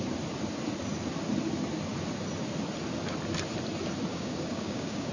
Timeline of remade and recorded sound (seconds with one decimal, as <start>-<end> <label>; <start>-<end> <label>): 0.0-4.1 recorded; 4.1-5.1 remade

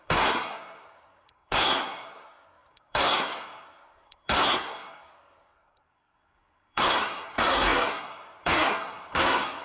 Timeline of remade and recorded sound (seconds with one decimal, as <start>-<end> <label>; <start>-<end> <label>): 0.0-9.6 remade

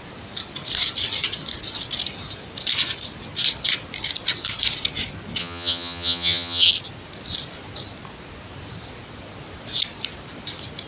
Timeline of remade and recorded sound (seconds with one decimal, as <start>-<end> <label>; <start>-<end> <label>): 0.0-5.4 recorded; 5.4-6.7 remade; 6.7-10.9 recorded

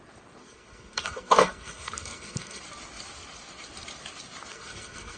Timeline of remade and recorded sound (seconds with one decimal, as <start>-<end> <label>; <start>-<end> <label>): 0.0-0.4 recorded; 0.4-2.6 remade; 2.6-4.5 recorded; 4.5-5.2 remade

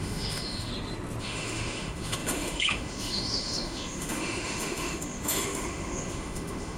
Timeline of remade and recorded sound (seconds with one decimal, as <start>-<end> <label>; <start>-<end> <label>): 0.0-0.7 remade; 0.7-1.2 recorded; 1.2-6.8 remade